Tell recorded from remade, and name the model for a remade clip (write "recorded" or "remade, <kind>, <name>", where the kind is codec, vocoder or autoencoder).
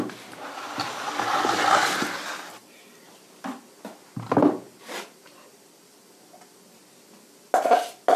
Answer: recorded